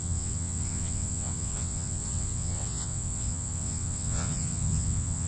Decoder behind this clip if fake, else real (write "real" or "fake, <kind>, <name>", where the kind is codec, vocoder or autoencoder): fake, vocoder, WaveNeXt